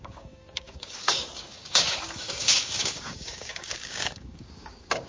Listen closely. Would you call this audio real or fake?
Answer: fake